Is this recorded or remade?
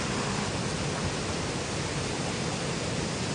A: recorded